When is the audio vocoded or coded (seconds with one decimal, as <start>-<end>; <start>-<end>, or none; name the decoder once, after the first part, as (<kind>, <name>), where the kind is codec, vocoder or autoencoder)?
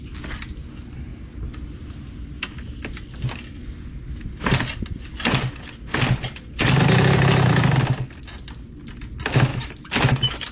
9.5-10.5 (autoencoder, DAC-VAE)